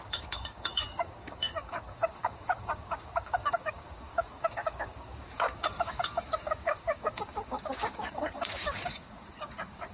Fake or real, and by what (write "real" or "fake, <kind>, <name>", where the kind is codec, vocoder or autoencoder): fake, codec, DAC